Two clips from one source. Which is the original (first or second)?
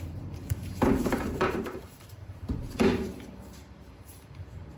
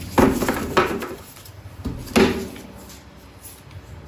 second